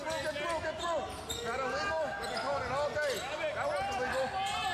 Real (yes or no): yes